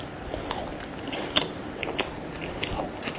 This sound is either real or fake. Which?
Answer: real